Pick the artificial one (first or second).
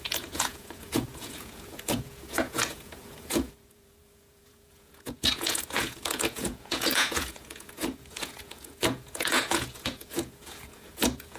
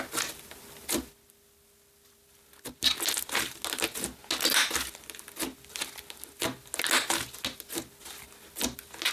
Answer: first